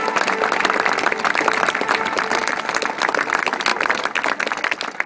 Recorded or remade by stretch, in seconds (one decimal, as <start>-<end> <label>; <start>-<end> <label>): 0.0-5.1 recorded